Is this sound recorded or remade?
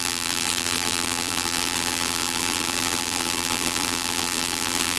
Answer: remade